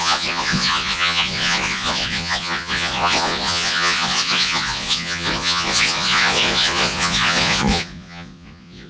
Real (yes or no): no